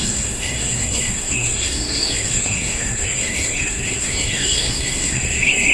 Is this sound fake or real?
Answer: fake